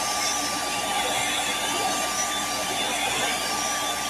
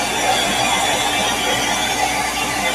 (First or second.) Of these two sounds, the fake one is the first